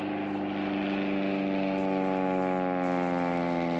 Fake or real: real